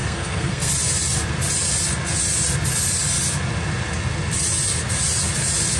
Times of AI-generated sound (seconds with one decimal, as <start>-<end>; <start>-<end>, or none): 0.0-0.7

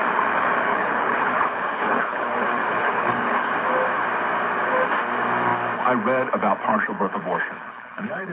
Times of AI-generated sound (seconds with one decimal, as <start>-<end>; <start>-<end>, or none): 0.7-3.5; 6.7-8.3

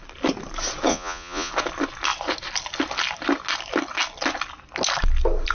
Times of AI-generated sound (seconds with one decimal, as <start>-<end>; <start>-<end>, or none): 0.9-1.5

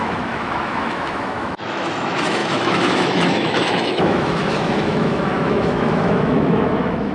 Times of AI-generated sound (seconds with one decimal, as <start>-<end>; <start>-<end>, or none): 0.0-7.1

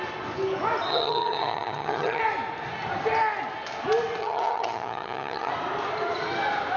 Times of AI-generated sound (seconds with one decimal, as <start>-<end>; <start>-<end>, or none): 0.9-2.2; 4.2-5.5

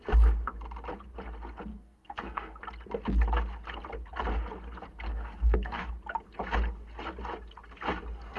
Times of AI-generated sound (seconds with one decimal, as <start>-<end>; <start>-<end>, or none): 1.7-2.6; 5.1-5.9

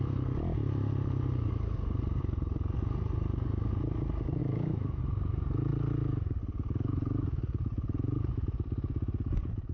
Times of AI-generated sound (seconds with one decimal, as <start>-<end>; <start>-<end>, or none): 4.4-5.0